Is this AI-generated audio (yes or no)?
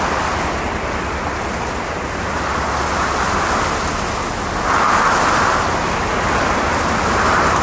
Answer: no